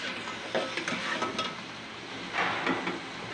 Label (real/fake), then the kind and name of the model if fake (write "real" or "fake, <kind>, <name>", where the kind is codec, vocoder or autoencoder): real